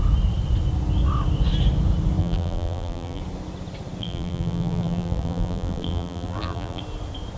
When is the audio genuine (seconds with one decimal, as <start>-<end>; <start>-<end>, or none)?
0.0-2.2; 3.2-4.0; 6.8-7.4